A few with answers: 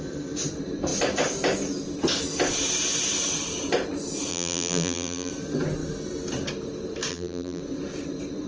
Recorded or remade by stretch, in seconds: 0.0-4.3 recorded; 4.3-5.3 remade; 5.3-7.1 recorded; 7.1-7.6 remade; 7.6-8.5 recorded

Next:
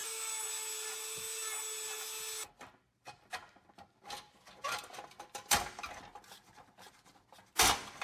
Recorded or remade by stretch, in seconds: 0.0-8.0 recorded

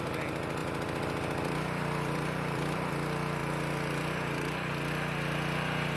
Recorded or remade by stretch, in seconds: 0.0-0.6 recorded; 0.6-2.9 remade; 2.9-3.4 recorded; 3.4-4.7 remade; 4.7-6.0 recorded

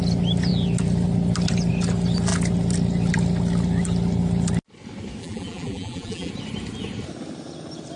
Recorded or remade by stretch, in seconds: 0.0-5.2 recorded; 5.2-6.3 remade; 6.3-8.0 recorded